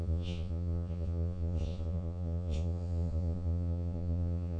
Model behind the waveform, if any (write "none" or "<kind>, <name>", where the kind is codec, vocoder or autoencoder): vocoder, Vocos